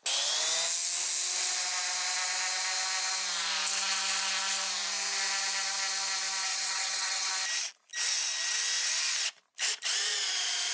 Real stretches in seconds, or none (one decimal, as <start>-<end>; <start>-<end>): 0.0-6.5; 7.3-10.7